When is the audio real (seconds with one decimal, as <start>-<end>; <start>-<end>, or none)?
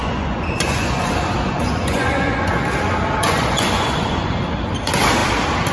1.0-1.6; 2.5-3.2; 4.3-5.7